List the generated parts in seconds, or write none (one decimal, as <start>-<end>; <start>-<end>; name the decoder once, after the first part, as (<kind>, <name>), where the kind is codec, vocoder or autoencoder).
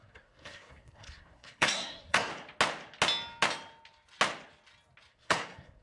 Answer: 0.0-2.3 (codec, SNAC); 5.1-5.8